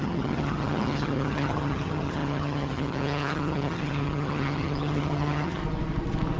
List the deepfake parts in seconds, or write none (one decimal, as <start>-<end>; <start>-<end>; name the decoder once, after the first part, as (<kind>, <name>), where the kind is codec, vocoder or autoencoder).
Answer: 0.0-5.6 (vocoder, HiFi-GAN)